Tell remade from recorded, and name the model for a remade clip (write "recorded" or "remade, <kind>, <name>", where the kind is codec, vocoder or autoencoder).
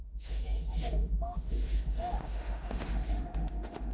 remade, autoencoder, DAC-VAE